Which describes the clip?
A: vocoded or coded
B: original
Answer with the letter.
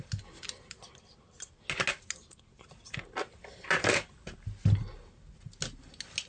B